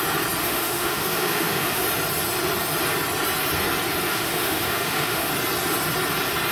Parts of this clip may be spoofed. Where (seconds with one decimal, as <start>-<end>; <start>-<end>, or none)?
0.4-1.8; 4.1-5.3